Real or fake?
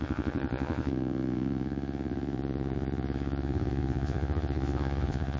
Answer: fake